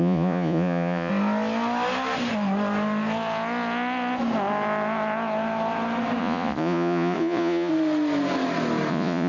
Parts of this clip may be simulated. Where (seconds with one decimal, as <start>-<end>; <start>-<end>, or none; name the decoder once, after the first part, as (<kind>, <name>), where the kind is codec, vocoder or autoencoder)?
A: 0.0-1.1 (vocoder, Vocos); 6.2-7.7; 8.9-9.3